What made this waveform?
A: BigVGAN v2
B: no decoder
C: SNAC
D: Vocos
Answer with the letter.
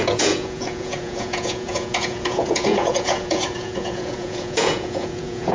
D